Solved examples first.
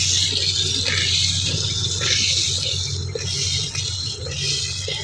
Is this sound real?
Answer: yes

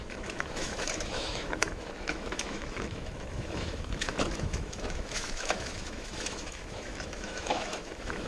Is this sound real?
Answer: no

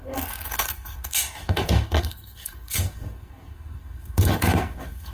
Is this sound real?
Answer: no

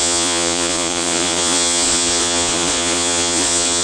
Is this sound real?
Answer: no